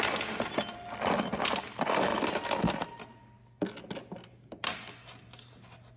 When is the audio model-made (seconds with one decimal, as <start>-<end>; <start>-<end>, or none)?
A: none